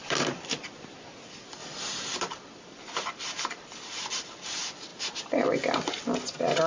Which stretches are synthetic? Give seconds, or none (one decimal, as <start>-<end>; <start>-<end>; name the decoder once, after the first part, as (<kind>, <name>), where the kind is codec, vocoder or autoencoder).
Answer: 0.0-1.6 (vocoder, BigVGAN v2); 2.2-4.9; 5.8-6.7